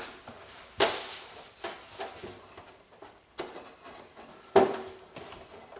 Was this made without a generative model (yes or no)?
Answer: yes